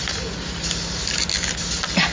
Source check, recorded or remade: recorded